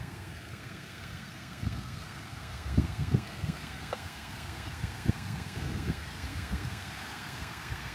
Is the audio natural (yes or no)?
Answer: no